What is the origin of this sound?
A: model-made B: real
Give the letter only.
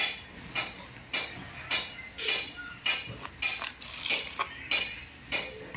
B